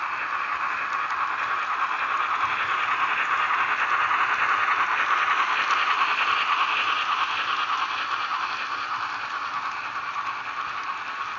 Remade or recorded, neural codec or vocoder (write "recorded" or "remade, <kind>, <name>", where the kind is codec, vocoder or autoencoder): recorded